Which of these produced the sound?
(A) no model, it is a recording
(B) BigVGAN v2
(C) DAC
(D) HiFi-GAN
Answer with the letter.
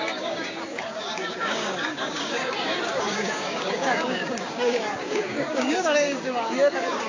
C